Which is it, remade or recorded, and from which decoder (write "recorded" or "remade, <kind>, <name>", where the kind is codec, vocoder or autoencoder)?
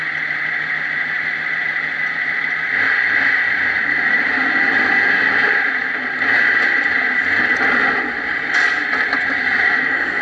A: recorded